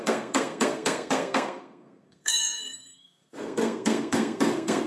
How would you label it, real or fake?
fake